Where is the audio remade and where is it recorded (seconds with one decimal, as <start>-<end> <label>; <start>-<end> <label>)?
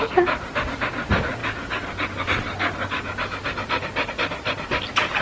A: 0.0-5.2 recorded